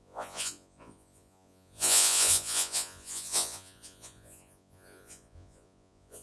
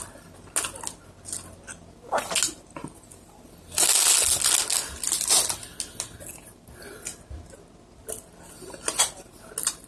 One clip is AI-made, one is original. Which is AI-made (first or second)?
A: first